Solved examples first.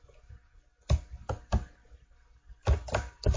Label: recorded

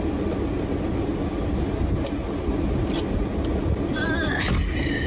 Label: recorded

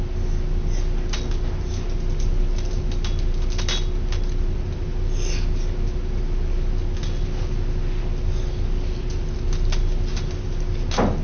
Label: recorded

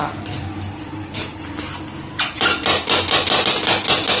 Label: recorded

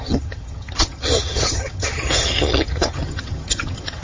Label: remade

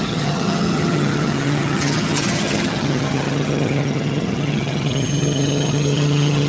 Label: remade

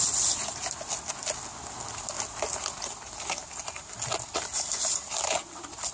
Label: recorded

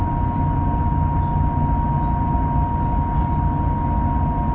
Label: recorded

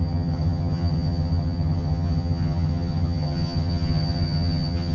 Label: remade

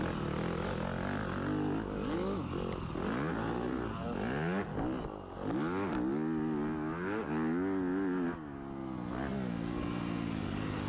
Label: recorded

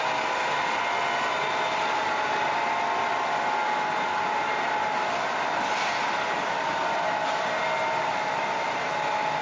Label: recorded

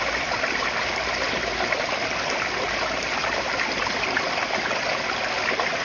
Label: recorded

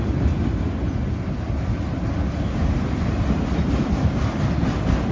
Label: recorded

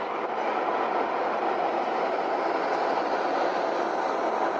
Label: recorded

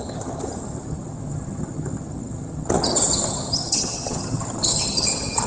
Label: remade